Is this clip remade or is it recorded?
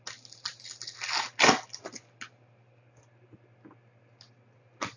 recorded